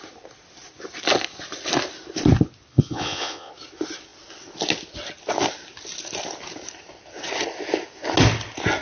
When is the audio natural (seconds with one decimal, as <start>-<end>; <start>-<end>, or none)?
0.0-2.7; 3.5-8.8